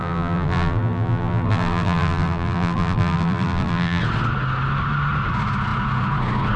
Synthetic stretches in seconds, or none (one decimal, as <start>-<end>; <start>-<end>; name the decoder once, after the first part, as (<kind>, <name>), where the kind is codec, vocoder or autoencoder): 0.0-4.0 (vocoder, BigVGAN v2)